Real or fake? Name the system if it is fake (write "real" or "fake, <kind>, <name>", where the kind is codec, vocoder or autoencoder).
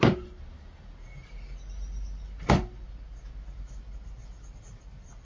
real